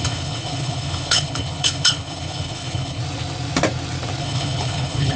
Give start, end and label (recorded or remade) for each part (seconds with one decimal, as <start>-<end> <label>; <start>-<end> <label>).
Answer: 0.0-3.0 remade; 3.0-4.2 recorded; 4.2-5.2 remade

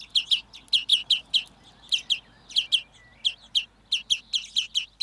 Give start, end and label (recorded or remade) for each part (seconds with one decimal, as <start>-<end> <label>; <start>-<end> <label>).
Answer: 0.0-5.0 recorded

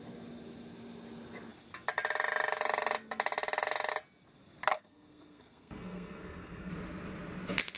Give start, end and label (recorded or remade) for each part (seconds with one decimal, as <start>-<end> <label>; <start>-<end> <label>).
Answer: 0.0-4.7 recorded; 4.7-6.7 remade; 6.7-7.8 recorded

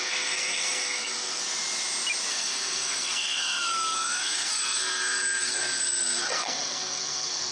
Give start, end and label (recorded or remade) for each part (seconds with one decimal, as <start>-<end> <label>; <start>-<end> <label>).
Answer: 0.0-1.4 remade; 1.4-2.3 recorded; 2.3-7.5 remade

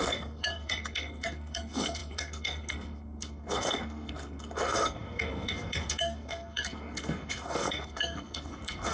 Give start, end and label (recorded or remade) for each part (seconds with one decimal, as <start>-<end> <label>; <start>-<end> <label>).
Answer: 0.0-8.9 remade